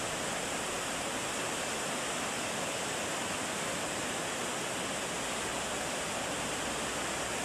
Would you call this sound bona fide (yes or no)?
yes